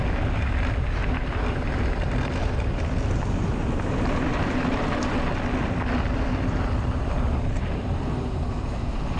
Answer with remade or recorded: recorded